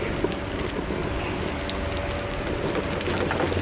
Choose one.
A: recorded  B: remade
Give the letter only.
A